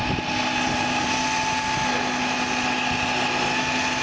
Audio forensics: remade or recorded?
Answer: recorded